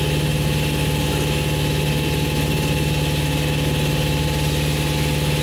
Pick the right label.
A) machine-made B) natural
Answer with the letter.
B